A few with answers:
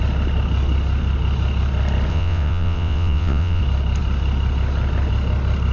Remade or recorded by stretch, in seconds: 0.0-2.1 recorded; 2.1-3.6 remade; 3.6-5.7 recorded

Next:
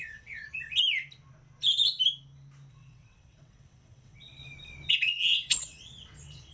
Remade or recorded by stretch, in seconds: 0.0-0.4 remade; 0.4-2.7 recorded; 2.7-4.4 remade; 4.4-4.9 recorded; 4.9-6.5 remade

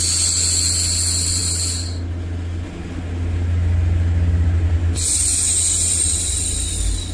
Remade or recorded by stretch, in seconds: 0.0-7.1 recorded